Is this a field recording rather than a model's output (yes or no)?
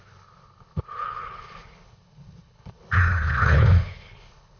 no